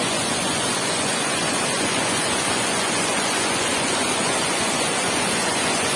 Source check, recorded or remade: remade